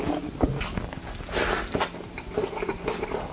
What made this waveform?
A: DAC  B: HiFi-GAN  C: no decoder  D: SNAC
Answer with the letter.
C